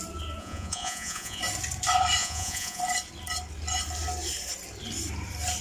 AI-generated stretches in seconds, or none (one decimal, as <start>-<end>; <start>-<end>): 0.4-1.4; 2.2-2.8